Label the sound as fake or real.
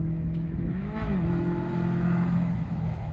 fake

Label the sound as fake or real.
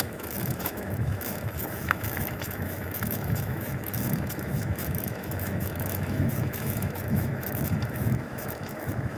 fake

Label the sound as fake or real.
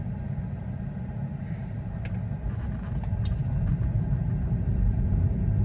real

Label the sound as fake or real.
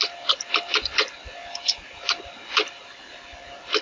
real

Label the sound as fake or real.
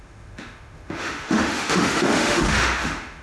fake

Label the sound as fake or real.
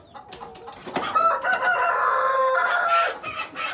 real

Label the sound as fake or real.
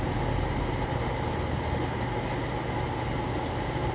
real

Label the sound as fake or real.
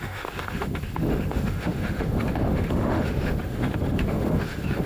fake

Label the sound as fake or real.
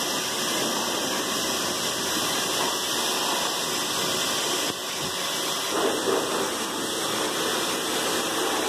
real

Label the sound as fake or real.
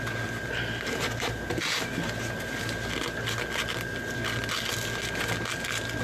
real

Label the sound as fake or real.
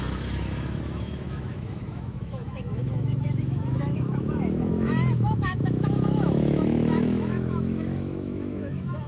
fake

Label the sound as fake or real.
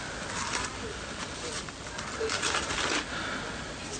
real